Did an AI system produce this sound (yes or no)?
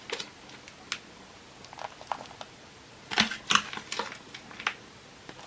no